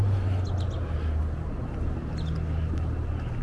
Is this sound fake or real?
real